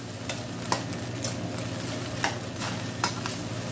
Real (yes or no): yes